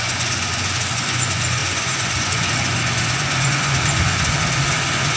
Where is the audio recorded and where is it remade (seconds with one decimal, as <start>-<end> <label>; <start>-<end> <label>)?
0.0-5.2 remade